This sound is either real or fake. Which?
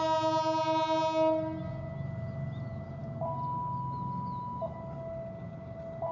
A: real